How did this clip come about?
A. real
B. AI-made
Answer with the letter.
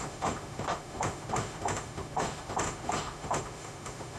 B